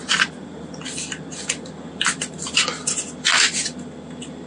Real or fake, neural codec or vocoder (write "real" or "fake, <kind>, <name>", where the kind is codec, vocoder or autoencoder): real